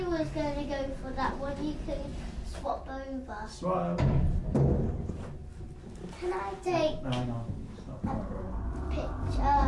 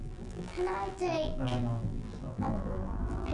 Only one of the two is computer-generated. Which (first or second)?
second